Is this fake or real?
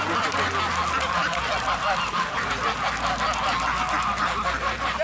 real